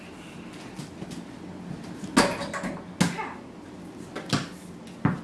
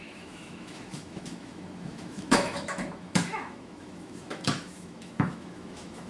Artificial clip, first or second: second